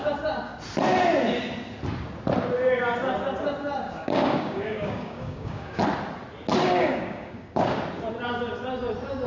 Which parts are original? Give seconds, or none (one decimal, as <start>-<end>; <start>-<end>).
0.0-3.9; 5.8-6.6; 7.8-9.3